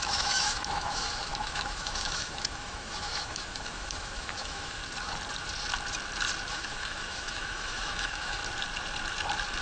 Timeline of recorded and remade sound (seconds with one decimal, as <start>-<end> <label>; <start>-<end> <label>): 0.0-4.8 remade; 4.8-6.5 recorded; 6.5-8.4 remade; 8.4-9.6 recorded